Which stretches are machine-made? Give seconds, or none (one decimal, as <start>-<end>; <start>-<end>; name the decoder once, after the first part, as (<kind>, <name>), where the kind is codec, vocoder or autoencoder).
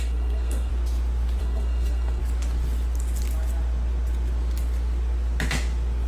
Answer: 0.0-0.7 (codec, SNAC); 1.4-2.2